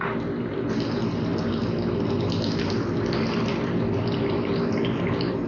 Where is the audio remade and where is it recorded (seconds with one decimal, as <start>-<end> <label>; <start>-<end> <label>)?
0.0-5.5 recorded